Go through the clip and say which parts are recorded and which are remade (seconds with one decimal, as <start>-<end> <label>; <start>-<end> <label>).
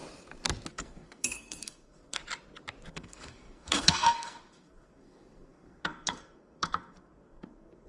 0.0-0.7 recorded; 0.7-2.2 remade; 2.2-2.9 recorded; 2.9-7.9 remade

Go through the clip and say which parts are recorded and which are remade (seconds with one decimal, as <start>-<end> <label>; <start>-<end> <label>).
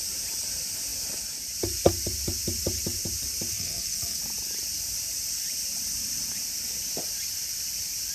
0.0-3.5 recorded; 3.5-4.2 remade; 4.2-8.1 recorded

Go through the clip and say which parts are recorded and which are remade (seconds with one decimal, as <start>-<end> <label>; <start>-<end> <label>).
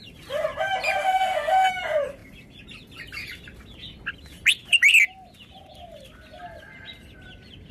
0.0-1.0 recorded; 1.0-1.7 remade; 1.7-7.7 recorded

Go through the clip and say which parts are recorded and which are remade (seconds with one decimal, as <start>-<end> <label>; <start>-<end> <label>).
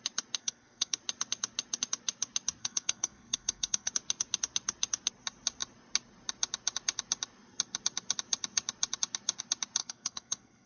0.0-0.4 recorded; 0.4-1.0 remade; 1.0-2.6 recorded; 2.6-3.9 remade; 3.9-9.8 recorded; 9.8-10.7 remade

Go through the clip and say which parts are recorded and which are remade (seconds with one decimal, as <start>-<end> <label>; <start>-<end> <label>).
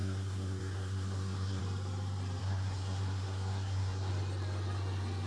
0.0-1.6 remade; 1.6-2.4 recorded; 2.4-4.1 remade; 4.1-5.3 recorded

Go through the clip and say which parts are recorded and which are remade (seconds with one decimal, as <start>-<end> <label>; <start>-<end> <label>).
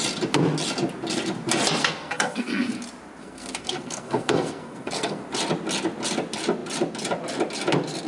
0.0-1.8 recorded; 1.8-2.8 remade; 2.8-3.2 recorded; 3.2-5.2 remade; 5.2-8.1 recorded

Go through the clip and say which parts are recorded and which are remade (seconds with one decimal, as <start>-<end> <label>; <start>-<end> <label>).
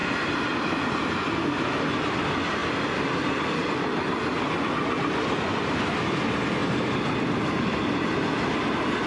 0.0-9.1 recorded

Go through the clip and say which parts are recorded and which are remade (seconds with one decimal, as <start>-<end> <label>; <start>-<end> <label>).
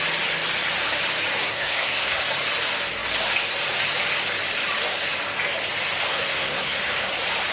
0.0-1.4 recorded; 1.4-2.2 remade; 2.2-6.1 recorded; 6.1-6.8 remade; 6.8-7.5 recorded